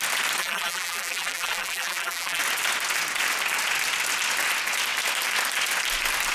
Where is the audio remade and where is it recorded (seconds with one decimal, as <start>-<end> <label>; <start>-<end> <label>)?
0.0-0.4 recorded; 0.4-2.4 remade; 2.4-6.3 recorded

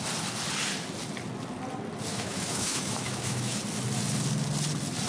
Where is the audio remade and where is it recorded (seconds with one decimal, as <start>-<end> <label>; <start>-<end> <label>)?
0.0-2.1 recorded; 2.1-3.6 remade; 3.6-5.1 recorded